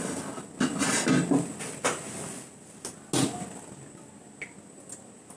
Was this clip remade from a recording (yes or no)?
no